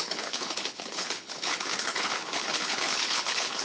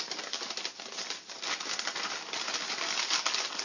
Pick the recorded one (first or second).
second